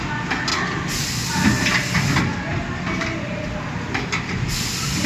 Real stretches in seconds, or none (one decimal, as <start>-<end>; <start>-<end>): 0.0-5.1